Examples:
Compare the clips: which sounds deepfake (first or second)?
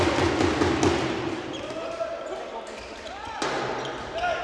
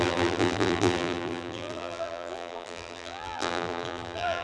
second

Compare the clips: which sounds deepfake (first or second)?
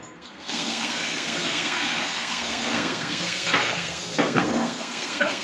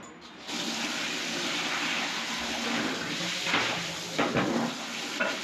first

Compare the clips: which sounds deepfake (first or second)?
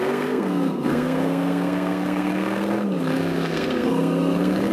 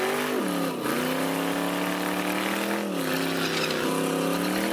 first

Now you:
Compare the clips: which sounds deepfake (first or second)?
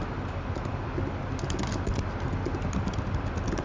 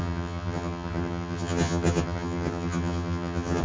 second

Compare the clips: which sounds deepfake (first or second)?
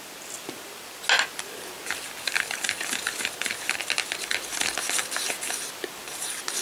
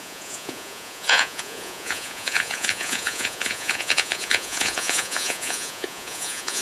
second